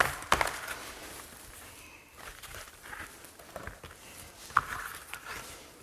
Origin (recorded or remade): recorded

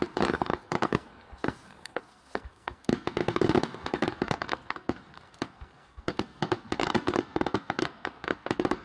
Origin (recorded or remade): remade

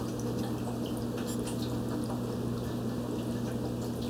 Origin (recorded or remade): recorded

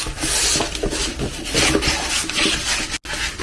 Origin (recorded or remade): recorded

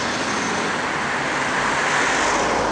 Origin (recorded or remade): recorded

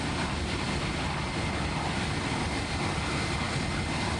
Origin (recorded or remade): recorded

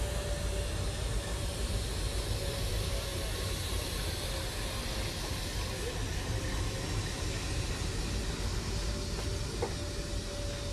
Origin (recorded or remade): recorded